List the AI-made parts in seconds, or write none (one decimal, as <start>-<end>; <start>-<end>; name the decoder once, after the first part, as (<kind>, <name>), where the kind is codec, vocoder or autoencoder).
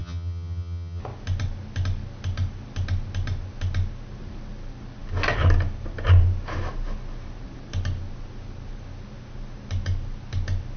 0.0-1.0 (vocoder, HiFi-GAN)